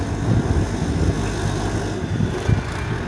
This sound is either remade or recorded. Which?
recorded